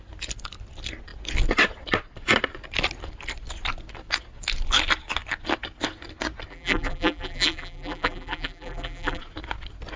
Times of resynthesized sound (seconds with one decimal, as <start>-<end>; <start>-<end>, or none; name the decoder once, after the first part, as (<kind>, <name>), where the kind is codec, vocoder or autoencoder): 6.5-9.2 (vocoder, BigVGAN v2)